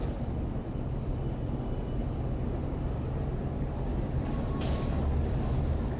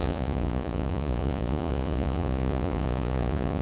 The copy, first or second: second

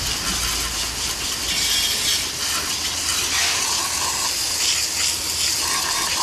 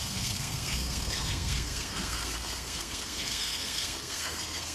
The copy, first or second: second